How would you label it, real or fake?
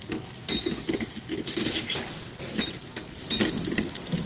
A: real